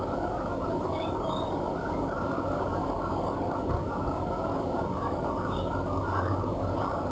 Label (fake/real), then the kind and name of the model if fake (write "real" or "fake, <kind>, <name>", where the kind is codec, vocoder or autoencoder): fake, codec, DAC